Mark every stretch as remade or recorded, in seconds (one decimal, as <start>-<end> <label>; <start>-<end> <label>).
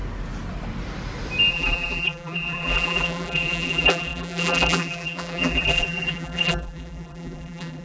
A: 0.0-1.5 recorded; 1.5-7.8 remade